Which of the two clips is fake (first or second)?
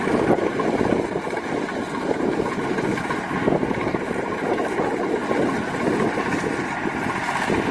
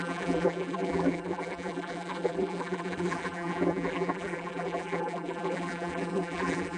second